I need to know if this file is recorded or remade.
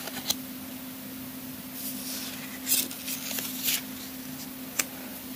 recorded